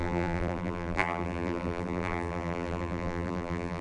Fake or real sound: fake